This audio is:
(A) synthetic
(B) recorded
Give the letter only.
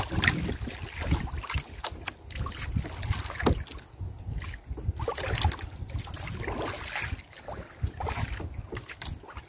B